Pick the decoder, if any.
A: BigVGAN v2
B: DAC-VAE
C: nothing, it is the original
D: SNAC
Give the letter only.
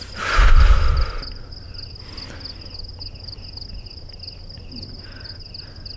C